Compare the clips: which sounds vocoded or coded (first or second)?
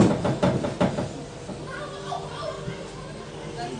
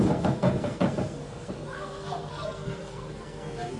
second